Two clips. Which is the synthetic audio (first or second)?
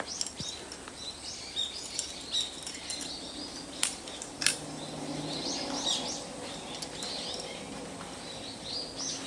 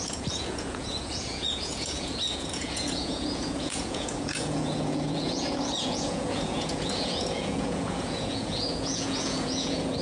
second